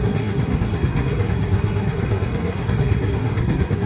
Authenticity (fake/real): fake